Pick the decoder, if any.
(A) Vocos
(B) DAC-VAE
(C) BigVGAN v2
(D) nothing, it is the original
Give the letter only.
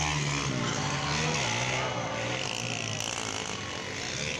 D